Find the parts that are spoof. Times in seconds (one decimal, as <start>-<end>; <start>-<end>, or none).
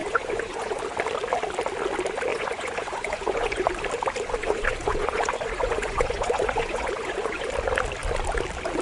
0.0-0.8; 2.3-3.7; 4.4-7.5